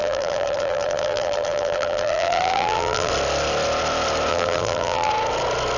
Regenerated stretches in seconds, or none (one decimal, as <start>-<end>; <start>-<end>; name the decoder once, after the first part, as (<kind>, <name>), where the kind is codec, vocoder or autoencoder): 0.0-3.1 (vocoder, BigVGAN v2); 4.3-5.1